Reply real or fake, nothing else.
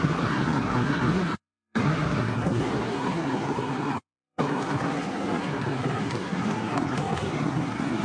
fake